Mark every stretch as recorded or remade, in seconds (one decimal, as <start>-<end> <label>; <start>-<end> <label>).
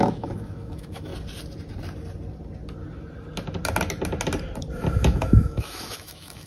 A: 0.0-1.1 remade; 1.1-5.0 recorded; 5.0-6.5 remade